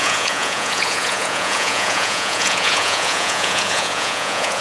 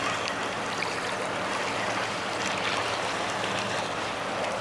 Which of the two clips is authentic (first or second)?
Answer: second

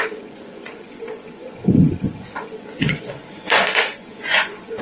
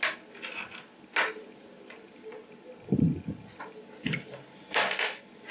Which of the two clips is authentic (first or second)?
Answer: second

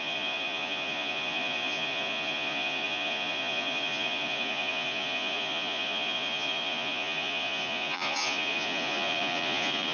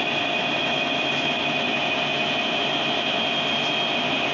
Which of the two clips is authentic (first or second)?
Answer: second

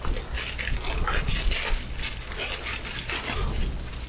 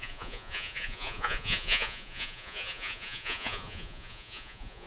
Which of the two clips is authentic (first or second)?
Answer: first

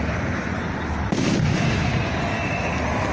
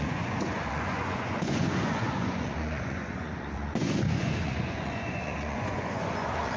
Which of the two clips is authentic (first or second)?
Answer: first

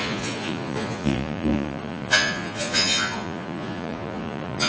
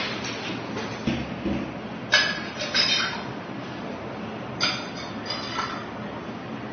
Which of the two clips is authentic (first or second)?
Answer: second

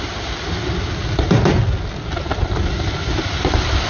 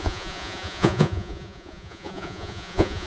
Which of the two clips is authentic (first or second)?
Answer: first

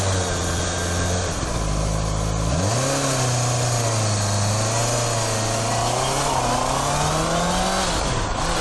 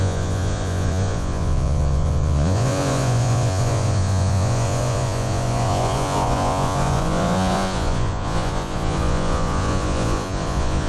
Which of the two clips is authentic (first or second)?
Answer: first